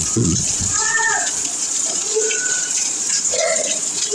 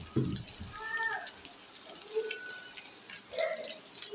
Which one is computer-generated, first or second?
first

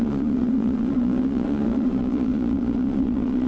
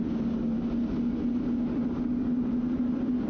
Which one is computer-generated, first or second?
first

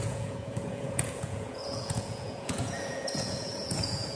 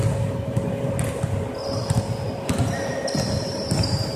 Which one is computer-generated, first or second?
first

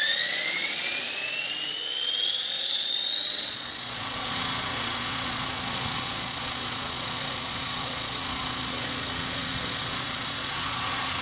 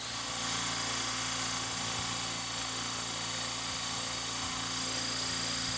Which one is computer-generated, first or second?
first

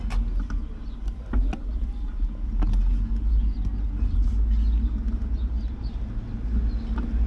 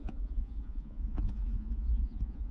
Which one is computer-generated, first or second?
second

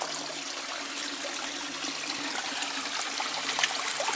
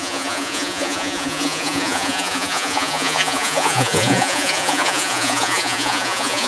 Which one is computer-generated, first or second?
second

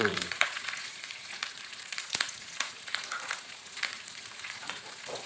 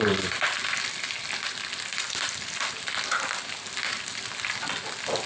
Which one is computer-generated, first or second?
first